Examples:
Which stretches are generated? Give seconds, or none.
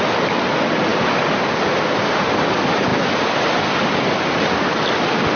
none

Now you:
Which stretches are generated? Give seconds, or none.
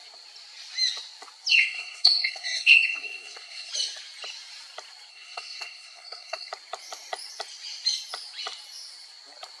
1.5-3.7 (codec, SNAC); 5.1-6.5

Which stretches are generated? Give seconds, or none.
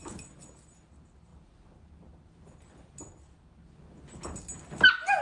none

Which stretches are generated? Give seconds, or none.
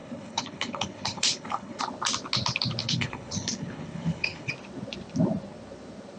0.0-1.8 (codec, HILCodec); 2.8-4.5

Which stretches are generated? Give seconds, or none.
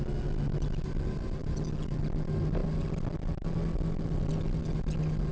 none